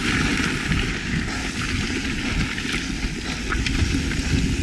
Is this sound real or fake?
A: real